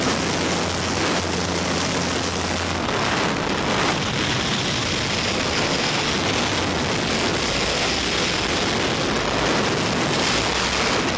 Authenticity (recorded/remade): recorded